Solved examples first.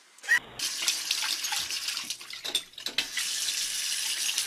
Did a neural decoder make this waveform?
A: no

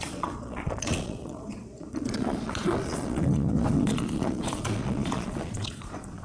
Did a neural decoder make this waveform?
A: yes